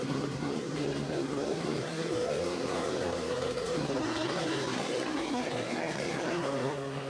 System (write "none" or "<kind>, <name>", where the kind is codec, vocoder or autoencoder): codec, SNAC